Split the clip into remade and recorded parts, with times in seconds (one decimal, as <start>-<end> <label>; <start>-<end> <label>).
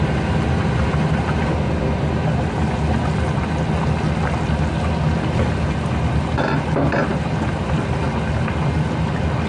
0.0-9.5 recorded